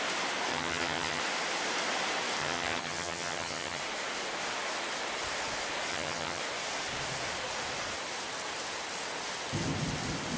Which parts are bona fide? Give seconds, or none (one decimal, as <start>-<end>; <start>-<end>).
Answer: 0.0-0.5; 1.2-2.4; 3.8-5.9; 6.4-10.4